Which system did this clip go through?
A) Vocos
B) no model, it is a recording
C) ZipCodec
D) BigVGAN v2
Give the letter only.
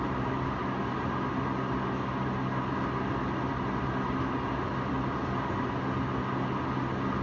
B